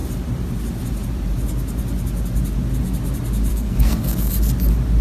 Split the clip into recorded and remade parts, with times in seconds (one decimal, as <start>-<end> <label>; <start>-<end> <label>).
0.0-3.5 recorded; 3.5-4.3 remade; 4.3-5.0 recorded